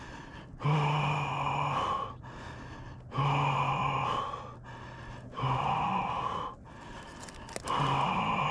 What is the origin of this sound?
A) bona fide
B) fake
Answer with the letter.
A